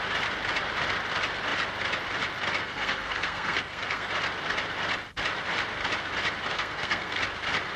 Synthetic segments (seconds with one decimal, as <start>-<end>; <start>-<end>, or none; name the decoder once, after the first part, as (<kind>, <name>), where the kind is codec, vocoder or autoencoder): 2.6-4.1 (codec, SNAC); 6.5-7.2